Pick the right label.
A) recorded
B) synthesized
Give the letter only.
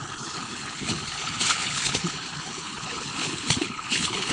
B